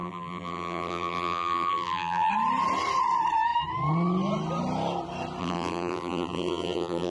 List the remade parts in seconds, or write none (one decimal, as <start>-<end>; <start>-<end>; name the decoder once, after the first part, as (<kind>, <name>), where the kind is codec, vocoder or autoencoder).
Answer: 0.0-2.3 (vocoder, BigVGAN v2); 5.4-7.1